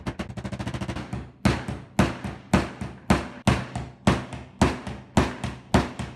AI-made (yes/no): no